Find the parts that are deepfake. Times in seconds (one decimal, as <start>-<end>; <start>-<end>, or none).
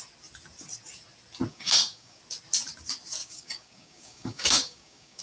1.5-2.2; 3.2-5.2